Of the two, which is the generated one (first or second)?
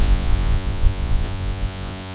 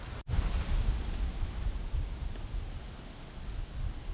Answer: first